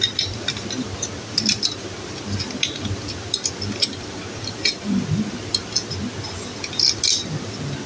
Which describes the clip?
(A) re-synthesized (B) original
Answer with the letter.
B